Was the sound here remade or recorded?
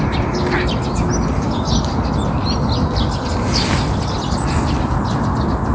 recorded